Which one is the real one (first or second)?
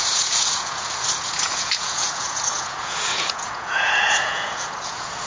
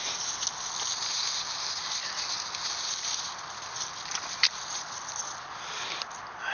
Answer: second